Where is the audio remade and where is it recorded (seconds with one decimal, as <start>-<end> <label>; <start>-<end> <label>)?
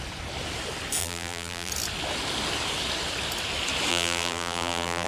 0.0-1.0 recorded; 1.0-1.7 remade; 1.7-3.9 recorded; 3.9-5.1 remade